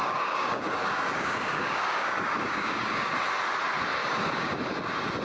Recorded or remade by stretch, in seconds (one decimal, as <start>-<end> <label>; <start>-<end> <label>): 0.0-3.1 remade; 3.1-4.0 recorded; 4.0-4.6 remade; 4.6-5.2 recorded